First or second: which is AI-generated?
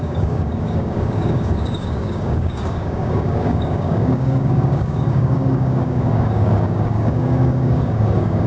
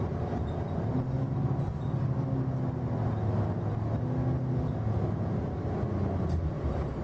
first